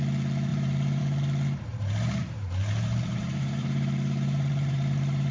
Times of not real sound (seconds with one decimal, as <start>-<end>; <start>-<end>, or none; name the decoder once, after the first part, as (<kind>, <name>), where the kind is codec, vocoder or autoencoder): 0.5-1.0 (vocoder, BigVGAN v2); 1.7-5.3